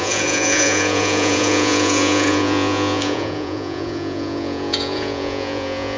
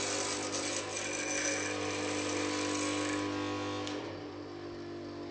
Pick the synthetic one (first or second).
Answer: first